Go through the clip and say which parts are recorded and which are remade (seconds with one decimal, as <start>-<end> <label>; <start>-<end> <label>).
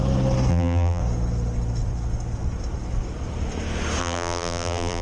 0.0-0.5 recorded; 0.5-1.0 remade; 1.0-4.0 recorded; 4.0-5.0 remade